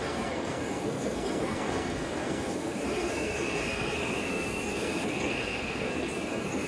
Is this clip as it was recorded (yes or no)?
no